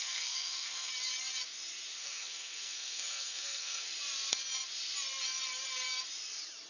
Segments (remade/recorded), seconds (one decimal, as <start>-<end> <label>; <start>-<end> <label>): 0.0-0.9 remade; 0.9-2.0 recorded; 2.0-3.9 remade; 3.9-6.7 recorded

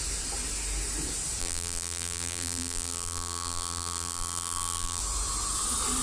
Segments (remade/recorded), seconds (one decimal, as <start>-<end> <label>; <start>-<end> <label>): 0.0-1.4 recorded; 1.4-5.0 remade; 5.0-6.0 recorded